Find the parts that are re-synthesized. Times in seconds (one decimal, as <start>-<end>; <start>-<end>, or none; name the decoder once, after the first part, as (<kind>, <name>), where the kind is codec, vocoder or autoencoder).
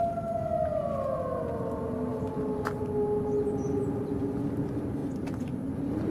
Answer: 5.0-5.6 (vocoder, BigVGAN v2)